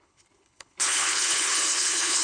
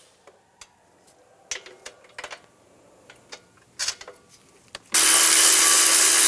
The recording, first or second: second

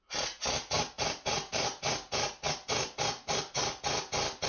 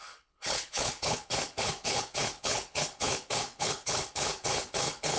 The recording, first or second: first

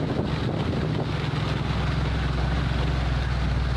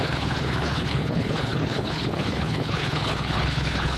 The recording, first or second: first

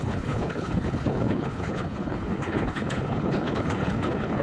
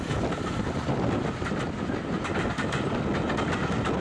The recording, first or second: second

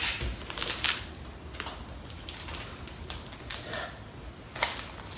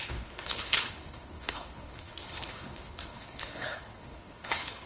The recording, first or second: first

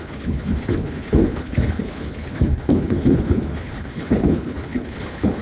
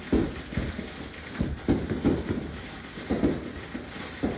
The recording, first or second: second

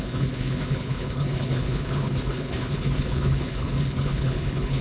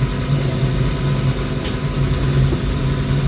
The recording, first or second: second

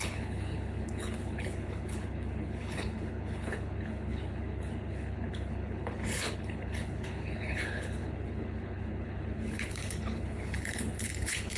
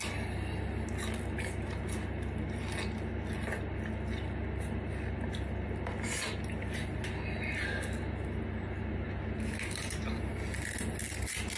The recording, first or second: second